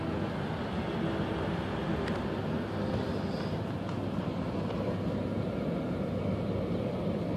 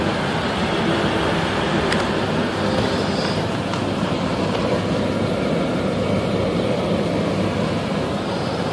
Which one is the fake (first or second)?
second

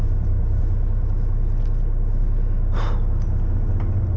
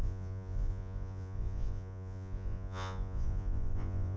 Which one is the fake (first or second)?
second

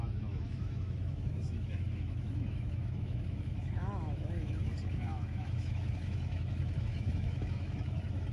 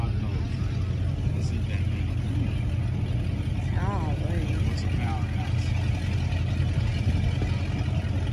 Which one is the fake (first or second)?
first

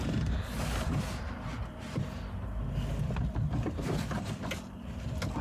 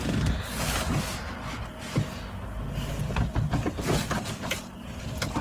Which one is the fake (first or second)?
first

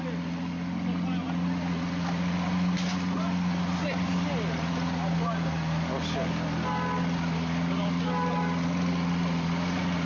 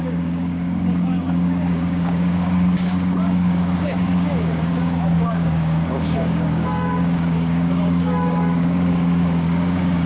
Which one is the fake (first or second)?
second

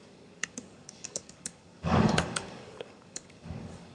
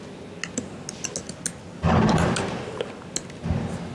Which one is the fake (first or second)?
first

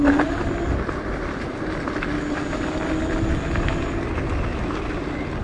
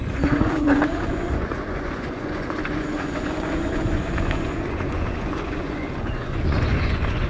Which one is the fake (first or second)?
second